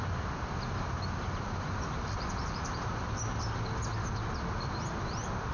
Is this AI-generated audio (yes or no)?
no